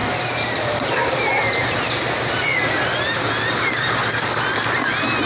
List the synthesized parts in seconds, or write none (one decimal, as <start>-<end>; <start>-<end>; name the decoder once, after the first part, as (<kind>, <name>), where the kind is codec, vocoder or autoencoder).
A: 0.0-3.2 (vocoder, BigVGAN v2)